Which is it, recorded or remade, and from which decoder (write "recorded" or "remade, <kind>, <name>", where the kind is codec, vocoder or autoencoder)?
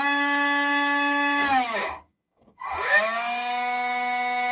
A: remade, codec, DAC